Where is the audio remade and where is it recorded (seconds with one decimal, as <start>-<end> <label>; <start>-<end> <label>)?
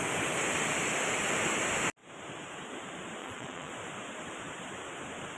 0.0-3.2 recorded; 3.2-3.7 remade; 3.7-5.4 recorded